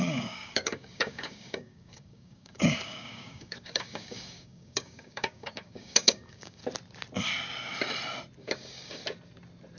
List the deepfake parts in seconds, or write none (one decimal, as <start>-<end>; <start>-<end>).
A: 0.0-6.6; 8.4-9.0